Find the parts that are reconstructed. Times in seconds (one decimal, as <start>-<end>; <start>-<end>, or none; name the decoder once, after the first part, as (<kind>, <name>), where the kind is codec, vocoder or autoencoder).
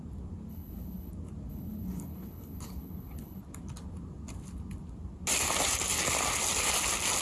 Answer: 0.5-1.1 (codec, HILCodec); 1.5-3.4